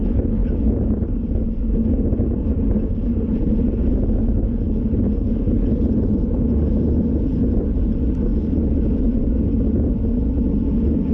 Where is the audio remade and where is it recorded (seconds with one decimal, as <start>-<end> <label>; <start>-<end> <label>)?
0.0-11.1 recorded